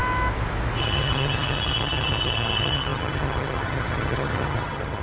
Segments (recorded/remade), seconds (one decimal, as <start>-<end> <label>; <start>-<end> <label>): 0.0-0.8 recorded; 0.8-5.0 remade